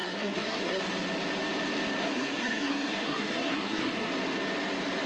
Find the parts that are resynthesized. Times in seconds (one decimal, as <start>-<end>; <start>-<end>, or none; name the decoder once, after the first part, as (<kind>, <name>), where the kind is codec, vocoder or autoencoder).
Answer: 0.0-0.8 (codec, SNAC); 2.0-4.1